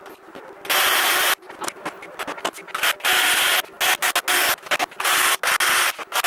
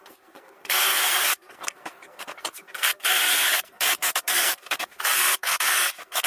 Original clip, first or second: first